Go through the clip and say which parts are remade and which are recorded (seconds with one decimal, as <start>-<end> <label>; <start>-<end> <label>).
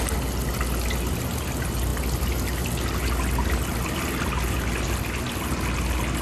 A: 0.0-6.2 recorded